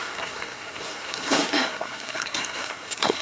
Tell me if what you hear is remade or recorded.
remade